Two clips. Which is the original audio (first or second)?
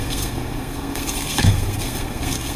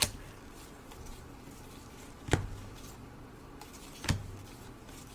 second